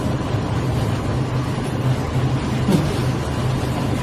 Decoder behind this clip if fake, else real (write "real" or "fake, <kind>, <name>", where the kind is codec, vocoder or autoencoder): real